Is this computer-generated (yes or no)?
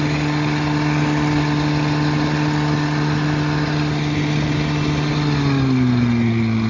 no